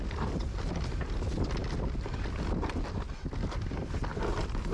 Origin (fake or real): real